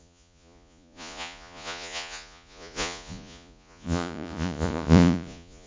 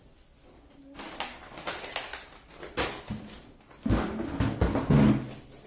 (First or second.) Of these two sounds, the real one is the second